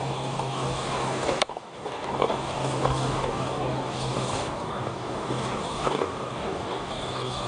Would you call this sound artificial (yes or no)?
yes